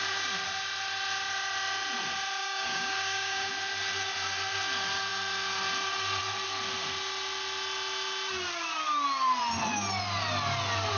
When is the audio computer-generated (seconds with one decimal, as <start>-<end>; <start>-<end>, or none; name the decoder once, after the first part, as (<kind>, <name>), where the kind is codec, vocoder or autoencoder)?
2.4-3.5 (codec, DAC)